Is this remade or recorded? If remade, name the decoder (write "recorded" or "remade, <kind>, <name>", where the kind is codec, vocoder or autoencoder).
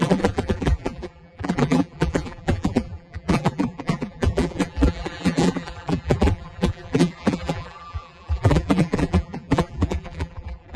remade, vocoder, BigVGAN v2